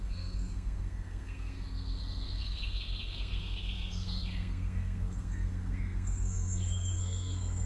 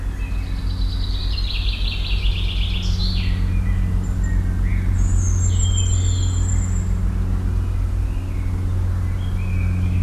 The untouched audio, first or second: second